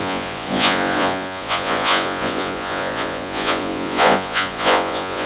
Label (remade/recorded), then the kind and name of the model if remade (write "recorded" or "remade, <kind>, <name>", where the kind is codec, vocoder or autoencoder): remade, vocoder, Vocos